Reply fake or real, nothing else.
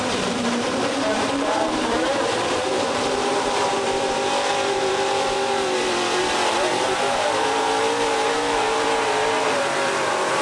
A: fake